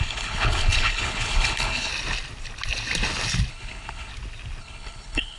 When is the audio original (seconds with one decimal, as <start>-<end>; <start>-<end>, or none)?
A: 1.9-3.5; 4.1-4.6